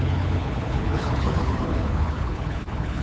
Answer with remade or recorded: remade